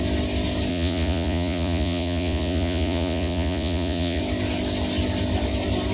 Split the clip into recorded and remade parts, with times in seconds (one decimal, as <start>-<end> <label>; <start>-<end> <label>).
0.0-0.7 recorded; 0.7-4.2 remade; 4.2-5.9 recorded